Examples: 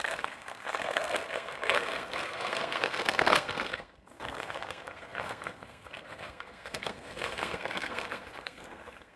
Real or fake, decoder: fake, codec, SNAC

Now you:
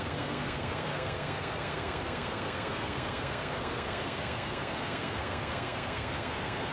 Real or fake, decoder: fake, codec, SNAC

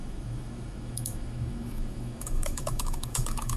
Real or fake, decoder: fake, autoencoder, DAC-VAE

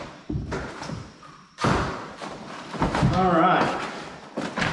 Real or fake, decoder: fake, vocoder, BigVGAN v2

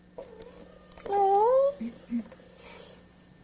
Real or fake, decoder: real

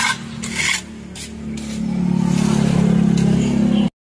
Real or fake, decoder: real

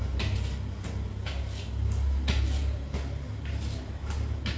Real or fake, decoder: real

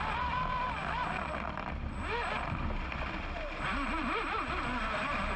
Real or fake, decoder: real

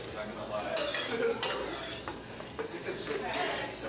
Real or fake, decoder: real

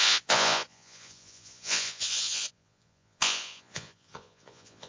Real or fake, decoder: fake, vocoder, Vocos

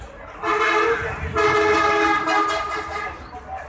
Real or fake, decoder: real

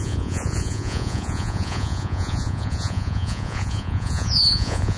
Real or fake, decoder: fake, vocoder, Vocos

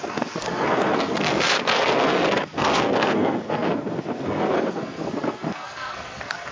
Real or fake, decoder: fake, codec, SNAC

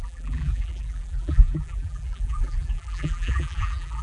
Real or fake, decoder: fake, vocoder, BigVGAN v2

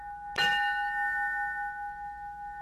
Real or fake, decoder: real